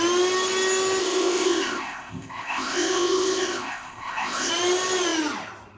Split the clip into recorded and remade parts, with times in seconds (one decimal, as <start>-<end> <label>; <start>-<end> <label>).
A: 0.0-1.0 recorded; 1.0-4.5 remade; 4.5-5.8 recorded